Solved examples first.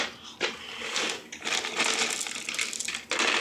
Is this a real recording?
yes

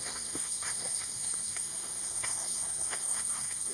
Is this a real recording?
no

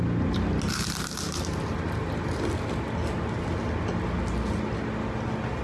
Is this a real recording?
yes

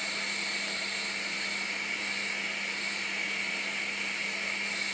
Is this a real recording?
yes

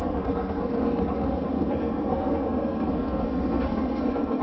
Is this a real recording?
no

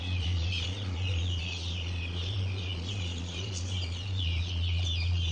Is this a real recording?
no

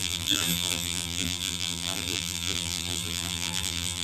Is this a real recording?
no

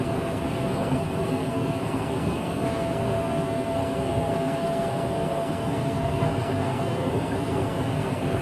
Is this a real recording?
no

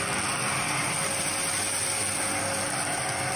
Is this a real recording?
yes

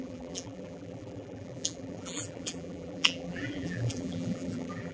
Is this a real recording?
no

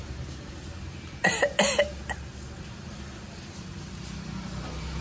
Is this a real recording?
yes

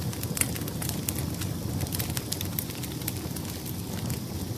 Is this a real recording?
yes